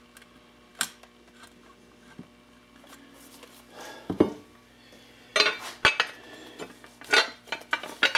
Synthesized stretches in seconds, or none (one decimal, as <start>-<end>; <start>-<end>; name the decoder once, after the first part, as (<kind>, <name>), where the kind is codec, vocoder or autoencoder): none

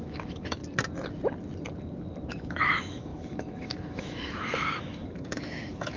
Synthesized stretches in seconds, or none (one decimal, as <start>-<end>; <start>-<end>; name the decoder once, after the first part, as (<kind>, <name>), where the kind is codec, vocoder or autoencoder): 0.0-0.6 (autoencoder, DAC-VAE); 2.3-6.0

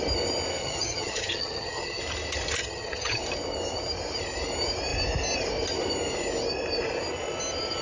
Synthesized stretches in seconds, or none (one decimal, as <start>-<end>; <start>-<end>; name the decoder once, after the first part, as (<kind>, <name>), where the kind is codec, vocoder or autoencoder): 0.6-2.0 (vocoder, HiFi-GAN); 2.6-3.2

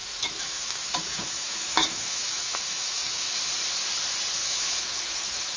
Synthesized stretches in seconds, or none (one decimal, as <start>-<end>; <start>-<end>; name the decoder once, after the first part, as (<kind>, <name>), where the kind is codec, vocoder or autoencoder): 0.0-3.4 (autoencoder, DAC-VAE); 4.4-5.6

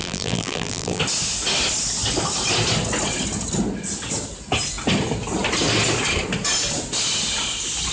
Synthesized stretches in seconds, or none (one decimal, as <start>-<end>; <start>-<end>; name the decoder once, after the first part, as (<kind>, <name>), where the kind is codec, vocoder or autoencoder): 0.0-1.0 (vocoder, BigVGAN v2)

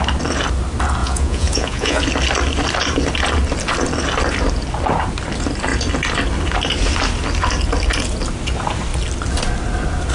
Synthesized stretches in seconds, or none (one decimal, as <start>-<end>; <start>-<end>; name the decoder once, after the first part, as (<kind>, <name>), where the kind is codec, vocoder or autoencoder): 1.0-2.0 (vocoder, Vocos)

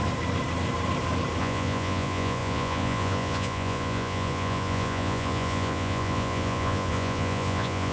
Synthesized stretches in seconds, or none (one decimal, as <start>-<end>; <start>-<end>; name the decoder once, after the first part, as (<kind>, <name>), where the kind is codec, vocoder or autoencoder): 1.4-7.9 (vocoder, Vocos)

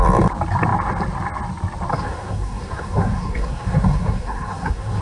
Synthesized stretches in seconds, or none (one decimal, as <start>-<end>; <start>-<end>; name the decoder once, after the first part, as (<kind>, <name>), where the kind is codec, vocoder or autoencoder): 1.9-5.0 (codec, SNAC)